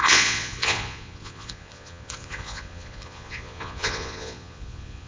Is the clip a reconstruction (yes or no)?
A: yes